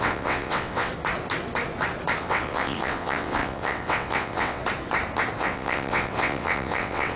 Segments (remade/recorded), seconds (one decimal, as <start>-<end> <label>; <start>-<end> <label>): 0.0-0.9 remade; 0.9-2.2 recorded; 2.2-4.6 remade; 4.6-5.4 recorded; 5.4-7.2 remade